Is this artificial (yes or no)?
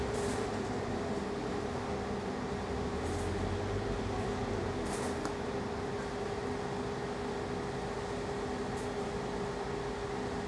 no